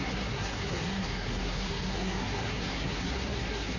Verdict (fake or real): fake